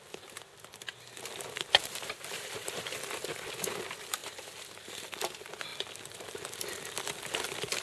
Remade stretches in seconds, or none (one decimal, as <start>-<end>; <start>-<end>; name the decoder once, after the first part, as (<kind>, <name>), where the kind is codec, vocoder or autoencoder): 1.8-2.8 (vocoder, BigVGAN v2); 4.2-5.1